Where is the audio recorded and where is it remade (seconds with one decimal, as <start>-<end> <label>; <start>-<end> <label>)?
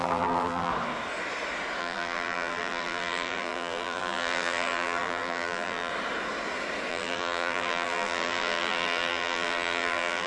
0.0-0.7 remade; 0.7-1.8 recorded; 1.8-5.9 remade; 5.9-6.9 recorded; 6.9-10.3 remade